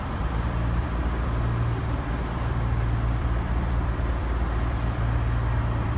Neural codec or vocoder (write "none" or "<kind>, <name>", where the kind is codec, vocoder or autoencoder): vocoder, BigVGAN v2